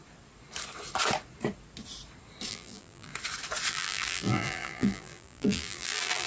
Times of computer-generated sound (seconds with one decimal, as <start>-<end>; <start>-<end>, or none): 2.5-3.1; 3.7-6.3